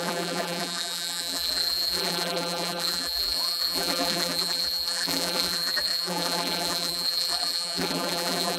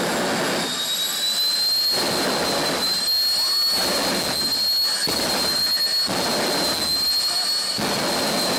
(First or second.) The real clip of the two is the second